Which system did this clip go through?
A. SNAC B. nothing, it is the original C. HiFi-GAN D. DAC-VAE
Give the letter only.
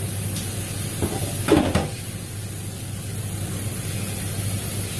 B